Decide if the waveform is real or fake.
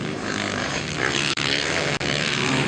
fake